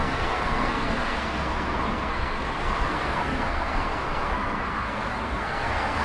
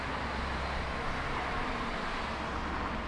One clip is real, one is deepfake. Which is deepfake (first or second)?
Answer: first